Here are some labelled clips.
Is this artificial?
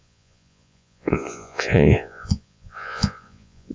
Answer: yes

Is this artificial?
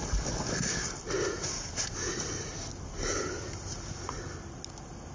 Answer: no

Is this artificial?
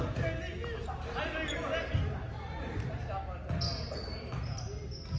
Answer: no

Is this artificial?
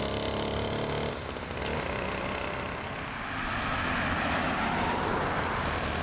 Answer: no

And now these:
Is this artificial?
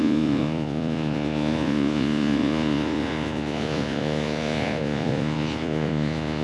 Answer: yes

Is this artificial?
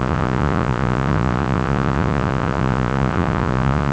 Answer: yes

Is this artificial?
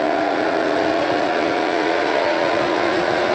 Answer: yes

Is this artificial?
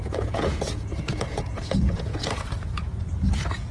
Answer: yes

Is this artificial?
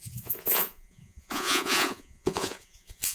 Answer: yes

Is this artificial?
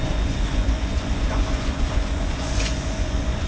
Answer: yes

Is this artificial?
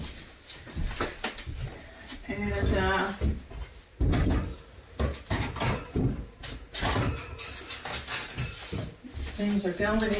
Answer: no